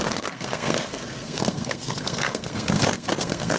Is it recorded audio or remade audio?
remade